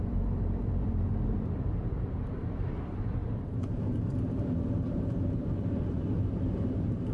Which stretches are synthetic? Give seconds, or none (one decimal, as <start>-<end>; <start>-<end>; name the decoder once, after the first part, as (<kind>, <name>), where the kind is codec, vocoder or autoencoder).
0.0-7.1 (vocoder, BigVGAN v2)